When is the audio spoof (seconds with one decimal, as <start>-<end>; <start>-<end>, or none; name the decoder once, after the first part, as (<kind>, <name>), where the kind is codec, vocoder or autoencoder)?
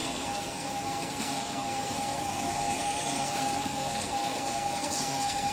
0.0-5.5 (codec, SNAC)